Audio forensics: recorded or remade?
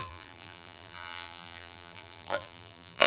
remade